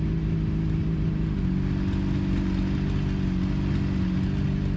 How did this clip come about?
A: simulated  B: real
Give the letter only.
B